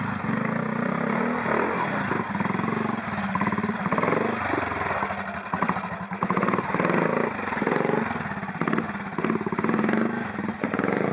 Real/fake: real